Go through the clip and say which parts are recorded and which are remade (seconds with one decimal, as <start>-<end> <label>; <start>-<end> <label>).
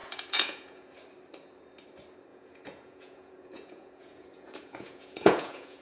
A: 0.0-0.9 remade; 0.9-2.3 recorded; 2.3-5.8 remade